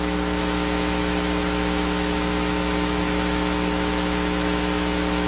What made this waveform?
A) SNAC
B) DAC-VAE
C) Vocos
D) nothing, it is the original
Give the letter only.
B